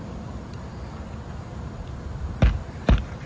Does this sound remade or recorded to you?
recorded